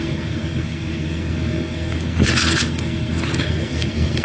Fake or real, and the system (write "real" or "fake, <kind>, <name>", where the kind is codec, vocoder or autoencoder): fake, codec, SNAC